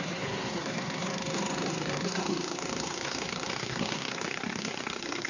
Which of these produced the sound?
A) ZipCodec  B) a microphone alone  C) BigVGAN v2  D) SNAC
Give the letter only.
D